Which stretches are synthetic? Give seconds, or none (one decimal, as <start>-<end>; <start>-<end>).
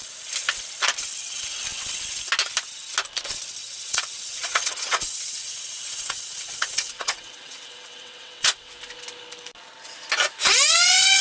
3.6-8.8